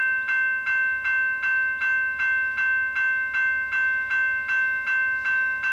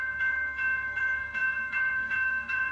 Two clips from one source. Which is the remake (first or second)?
second